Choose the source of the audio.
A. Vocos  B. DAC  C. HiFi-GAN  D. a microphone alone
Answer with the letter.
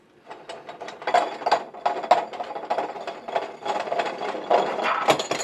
D